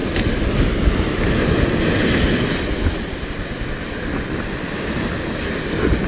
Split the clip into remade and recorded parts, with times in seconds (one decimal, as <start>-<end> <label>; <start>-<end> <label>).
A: 0.0-6.1 recorded

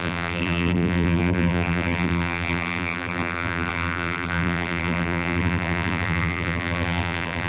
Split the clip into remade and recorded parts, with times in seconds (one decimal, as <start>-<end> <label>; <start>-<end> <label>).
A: 0.0-7.5 remade

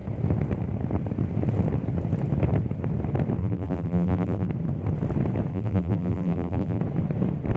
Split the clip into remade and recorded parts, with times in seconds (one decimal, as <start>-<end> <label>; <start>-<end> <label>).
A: 0.0-3.4 recorded; 3.4-4.5 remade; 4.5-5.5 recorded; 5.5-6.8 remade; 6.8-7.6 recorded

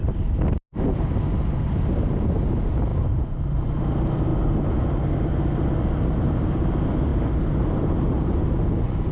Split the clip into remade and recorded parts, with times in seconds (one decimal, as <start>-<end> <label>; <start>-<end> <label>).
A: 0.0-2.9 recorded; 2.9-3.6 remade; 3.6-9.1 recorded

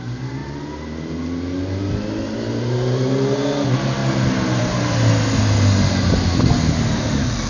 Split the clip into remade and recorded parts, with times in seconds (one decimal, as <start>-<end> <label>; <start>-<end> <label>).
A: 0.0-7.5 recorded